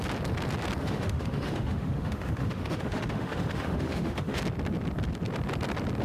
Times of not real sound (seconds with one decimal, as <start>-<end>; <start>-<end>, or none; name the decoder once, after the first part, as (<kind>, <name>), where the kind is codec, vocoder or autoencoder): 0.8-4.4 (autoencoder, DAC-VAE)